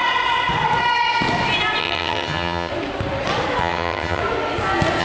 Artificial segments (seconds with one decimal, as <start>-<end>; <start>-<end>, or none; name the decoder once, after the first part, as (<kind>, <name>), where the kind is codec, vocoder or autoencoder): 1.8-2.7 (vocoder, HiFi-GAN); 3.6-4.2